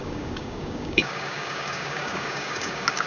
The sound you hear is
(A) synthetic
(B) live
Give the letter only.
A